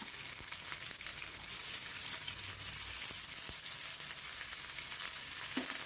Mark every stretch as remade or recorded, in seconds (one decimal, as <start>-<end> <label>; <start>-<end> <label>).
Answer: 0.0-5.9 recorded